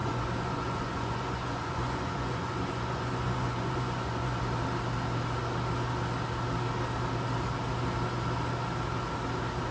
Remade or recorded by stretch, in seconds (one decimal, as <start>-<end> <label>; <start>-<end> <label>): 0.0-4.4 remade; 4.4-9.7 recorded